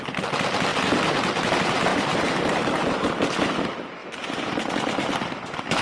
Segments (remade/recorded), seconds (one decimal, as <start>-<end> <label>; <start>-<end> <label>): 0.0-1.9 recorded; 1.9-3.2 remade; 3.2-4.0 recorded; 4.0-4.7 remade; 4.7-5.8 recorded